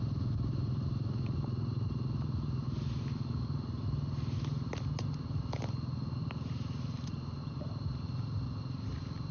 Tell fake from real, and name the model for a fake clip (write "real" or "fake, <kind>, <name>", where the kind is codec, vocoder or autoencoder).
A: real